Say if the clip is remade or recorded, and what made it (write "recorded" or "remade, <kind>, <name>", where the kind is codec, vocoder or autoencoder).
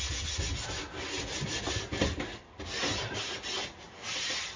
recorded